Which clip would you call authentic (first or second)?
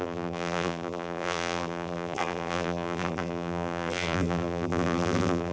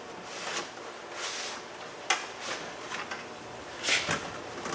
second